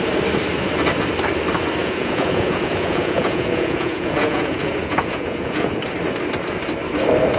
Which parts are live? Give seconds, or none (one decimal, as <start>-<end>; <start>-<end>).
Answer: 0.0-1.8; 5.8-7.4